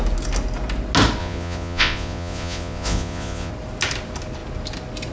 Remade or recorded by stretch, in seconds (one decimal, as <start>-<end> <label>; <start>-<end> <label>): 0.0-1.2 recorded; 1.2-3.5 remade; 3.5-5.1 recorded